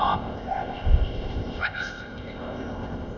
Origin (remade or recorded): remade